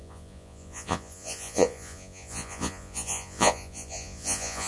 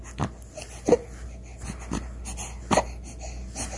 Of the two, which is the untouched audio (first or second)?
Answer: second